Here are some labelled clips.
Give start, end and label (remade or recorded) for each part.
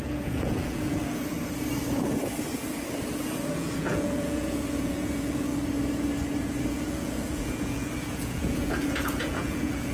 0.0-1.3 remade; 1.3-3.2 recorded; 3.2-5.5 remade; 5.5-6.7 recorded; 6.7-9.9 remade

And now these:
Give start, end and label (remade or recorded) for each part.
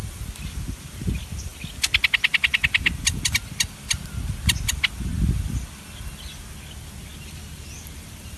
0.0-8.4 recorded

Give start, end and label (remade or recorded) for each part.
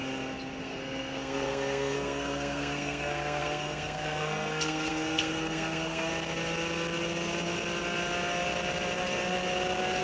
0.0-0.6 recorded; 0.6-6.1 remade; 6.1-10.0 recorded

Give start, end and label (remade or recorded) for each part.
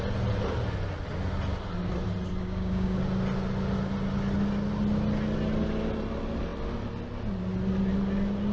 0.0-2.4 recorded; 2.4-3.0 remade; 3.0-8.5 recorded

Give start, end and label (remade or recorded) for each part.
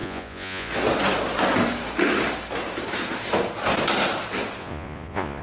0.0-0.7 remade; 0.7-4.6 recorded; 4.6-5.4 remade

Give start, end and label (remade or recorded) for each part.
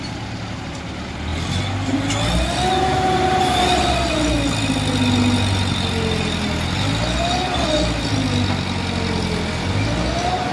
0.0-10.5 recorded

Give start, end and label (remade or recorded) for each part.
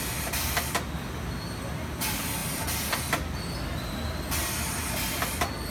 0.0-5.7 recorded